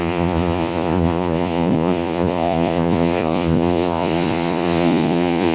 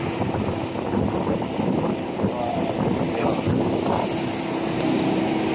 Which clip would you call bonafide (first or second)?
second